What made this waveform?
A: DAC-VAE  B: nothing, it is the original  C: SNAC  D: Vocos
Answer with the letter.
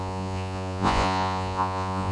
D